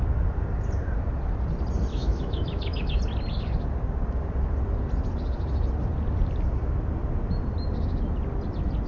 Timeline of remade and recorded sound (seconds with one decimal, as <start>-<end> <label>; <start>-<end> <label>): 0.0-1.9 recorded; 1.9-3.0 remade; 3.0-8.9 recorded